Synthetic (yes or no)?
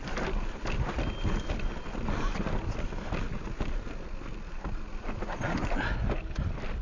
no